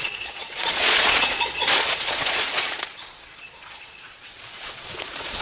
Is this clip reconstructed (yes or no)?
yes